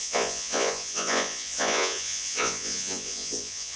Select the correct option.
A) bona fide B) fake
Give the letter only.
B